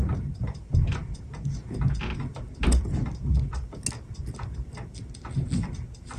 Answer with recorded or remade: recorded